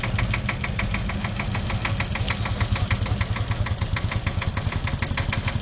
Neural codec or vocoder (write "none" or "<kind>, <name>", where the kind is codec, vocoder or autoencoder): none